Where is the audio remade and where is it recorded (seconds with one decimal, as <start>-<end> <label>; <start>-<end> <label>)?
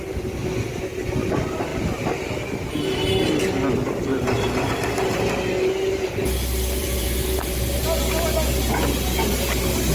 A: 0.0-4.1 recorded; 4.1-4.7 remade; 4.7-6.8 recorded; 6.8-7.8 remade; 7.8-9.9 recorded